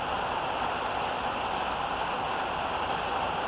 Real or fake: real